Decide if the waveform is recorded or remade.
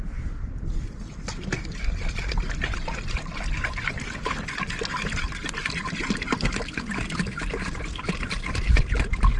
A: recorded